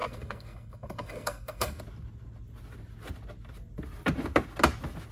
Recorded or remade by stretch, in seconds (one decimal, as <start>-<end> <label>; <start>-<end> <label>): 0.0-1.8 remade; 1.8-5.1 recorded